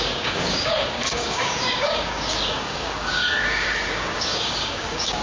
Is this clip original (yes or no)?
no